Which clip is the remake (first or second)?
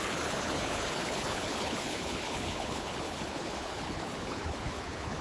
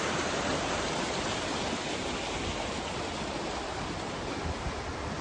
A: first